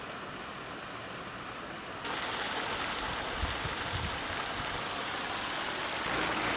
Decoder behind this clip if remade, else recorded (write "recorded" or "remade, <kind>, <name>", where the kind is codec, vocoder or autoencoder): recorded